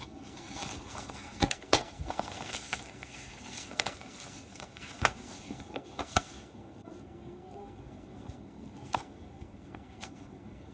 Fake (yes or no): yes